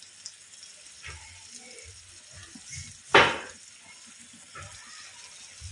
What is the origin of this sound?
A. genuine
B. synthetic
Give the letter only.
A